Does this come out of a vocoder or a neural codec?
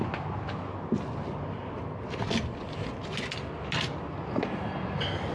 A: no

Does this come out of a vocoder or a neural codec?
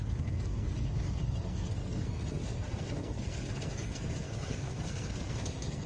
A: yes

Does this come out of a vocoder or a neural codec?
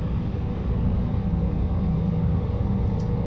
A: yes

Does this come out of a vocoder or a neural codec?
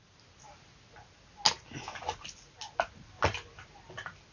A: no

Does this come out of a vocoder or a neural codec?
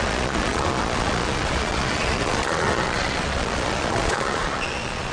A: yes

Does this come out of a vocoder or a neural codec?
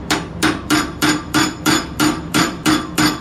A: yes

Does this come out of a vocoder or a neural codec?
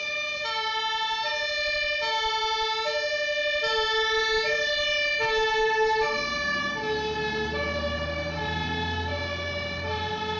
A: yes